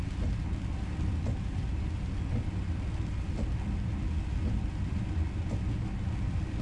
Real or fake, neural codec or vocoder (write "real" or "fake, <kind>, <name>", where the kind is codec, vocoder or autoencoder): real